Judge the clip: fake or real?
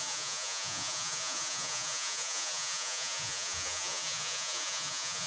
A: fake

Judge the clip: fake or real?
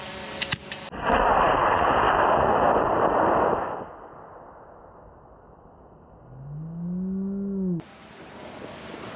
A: real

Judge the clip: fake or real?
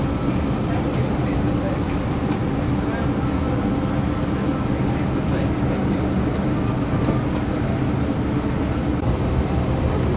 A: real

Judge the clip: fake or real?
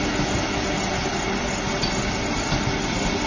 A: real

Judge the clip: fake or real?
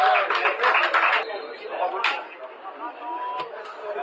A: real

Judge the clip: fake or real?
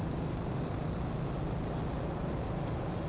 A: real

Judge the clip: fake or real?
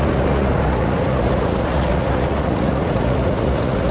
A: fake